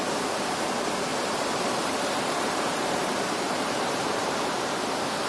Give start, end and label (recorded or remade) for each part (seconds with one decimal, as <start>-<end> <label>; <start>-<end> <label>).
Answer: 0.0-1.1 recorded; 1.1-4.3 remade; 4.3-5.3 recorded